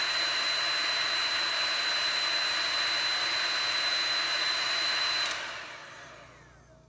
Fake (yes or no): no